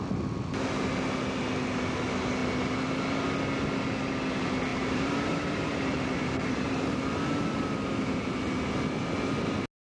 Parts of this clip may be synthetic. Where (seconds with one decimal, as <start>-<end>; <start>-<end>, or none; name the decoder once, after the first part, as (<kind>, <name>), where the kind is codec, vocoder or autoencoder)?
4.7-7.0 (vocoder, BigVGAN v2)